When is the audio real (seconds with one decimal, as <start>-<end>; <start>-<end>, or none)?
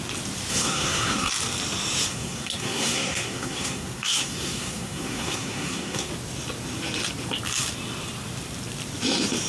0.0-0.5; 1.3-2.1; 6.1-9.5